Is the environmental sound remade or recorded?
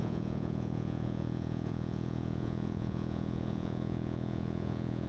remade